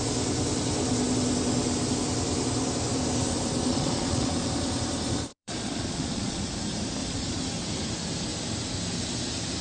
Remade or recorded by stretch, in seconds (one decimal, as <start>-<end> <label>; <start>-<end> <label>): 0.0-3.7 recorded; 3.7-4.3 remade; 4.3-5.3 recorded; 5.3-6.4 remade; 6.4-7.0 recorded; 7.0-7.5 remade; 7.5-9.6 recorded